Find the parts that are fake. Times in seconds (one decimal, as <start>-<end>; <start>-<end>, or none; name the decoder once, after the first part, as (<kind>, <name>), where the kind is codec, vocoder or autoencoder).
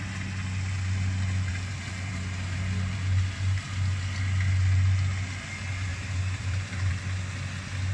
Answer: 1.5-2.1 (vocoder, BigVGAN v2); 5.9-6.9